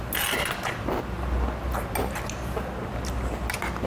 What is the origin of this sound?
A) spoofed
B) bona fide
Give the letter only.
B